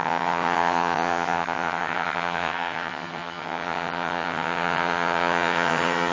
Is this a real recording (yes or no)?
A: no